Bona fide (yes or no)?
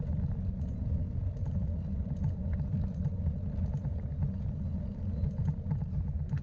yes